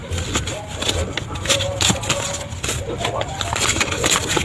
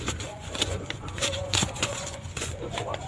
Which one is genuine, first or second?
first